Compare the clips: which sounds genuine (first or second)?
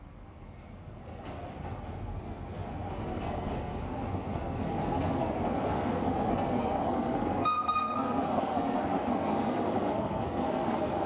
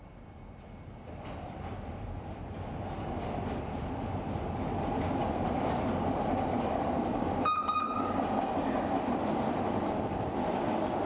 second